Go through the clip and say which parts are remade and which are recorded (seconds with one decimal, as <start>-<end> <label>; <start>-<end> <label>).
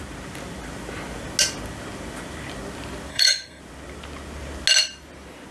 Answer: 0.0-3.1 recorded; 3.1-3.6 remade; 3.6-5.5 recorded